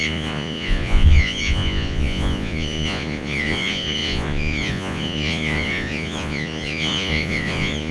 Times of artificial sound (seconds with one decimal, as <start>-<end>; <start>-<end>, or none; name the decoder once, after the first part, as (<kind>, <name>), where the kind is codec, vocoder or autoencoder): 0.0-7.9 (vocoder, Vocos)